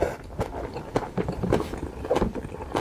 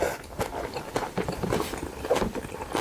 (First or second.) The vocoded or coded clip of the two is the second